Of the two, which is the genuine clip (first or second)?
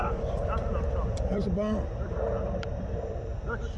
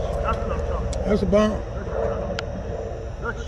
second